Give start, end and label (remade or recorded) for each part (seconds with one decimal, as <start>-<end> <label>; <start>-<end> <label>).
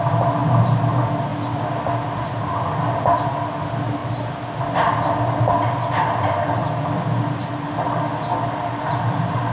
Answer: 0.0-9.5 recorded